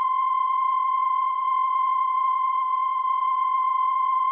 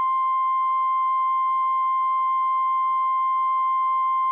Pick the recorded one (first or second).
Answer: second